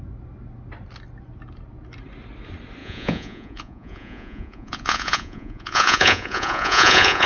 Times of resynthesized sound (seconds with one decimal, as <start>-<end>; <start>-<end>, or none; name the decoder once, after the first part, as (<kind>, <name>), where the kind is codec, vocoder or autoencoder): 2.8-7.3 (vocoder, Vocos)